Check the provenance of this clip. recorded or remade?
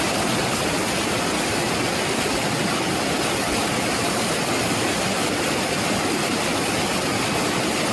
recorded